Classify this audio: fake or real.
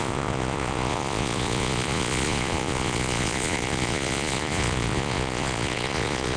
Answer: fake